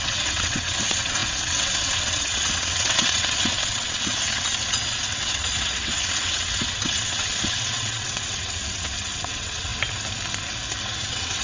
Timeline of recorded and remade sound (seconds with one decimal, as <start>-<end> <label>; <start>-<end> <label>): 0.0-9.7 remade; 9.7-11.0 recorded; 11.0-11.4 remade

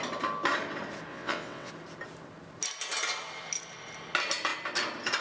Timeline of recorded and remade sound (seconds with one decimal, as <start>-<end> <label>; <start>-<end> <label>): 0.0-1.1 recorded; 1.1-1.7 remade; 1.7-5.2 recorded